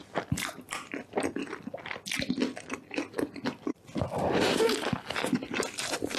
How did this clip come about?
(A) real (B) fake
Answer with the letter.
A